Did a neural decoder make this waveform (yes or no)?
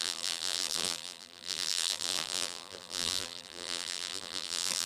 yes